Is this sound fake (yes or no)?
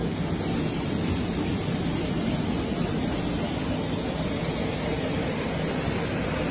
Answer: no